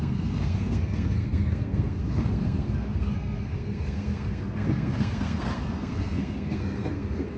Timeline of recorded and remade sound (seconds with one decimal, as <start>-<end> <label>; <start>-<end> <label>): 0.0-7.4 remade

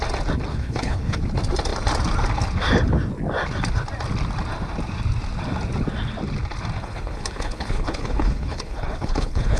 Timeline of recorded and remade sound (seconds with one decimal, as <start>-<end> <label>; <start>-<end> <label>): 0.0-0.5 recorded; 0.5-1.2 remade; 1.2-6.8 recorded; 6.8-9.6 remade

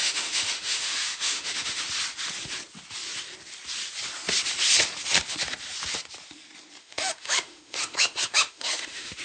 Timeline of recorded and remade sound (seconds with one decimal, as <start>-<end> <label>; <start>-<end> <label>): 0.0-1.8 remade; 1.8-6.8 recorded; 6.8-9.2 remade

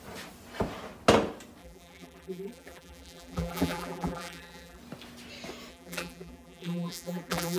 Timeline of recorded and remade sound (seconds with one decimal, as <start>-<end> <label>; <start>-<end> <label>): 0.0-1.6 recorded; 1.6-4.8 remade; 4.8-5.7 recorded; 5.7-7.6 remade

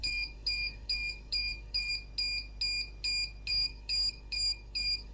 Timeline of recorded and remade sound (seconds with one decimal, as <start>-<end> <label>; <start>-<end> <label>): 0.0-1.9 remade; 1.9-3.5 recorded; 3.5-5.1 remade

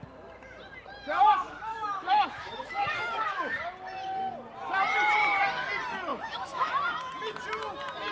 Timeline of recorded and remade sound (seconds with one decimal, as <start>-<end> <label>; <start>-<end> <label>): 0.0-1.7 recorded; 1.7-3.6 remade; 3.6-6.1 recorded; 6.1-6.7 remade; 6.7-8.1 recorded